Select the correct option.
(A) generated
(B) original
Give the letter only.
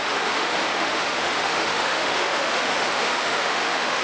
A